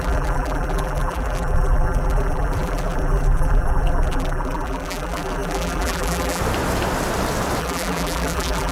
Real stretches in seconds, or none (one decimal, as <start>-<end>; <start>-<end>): 6.4-7.6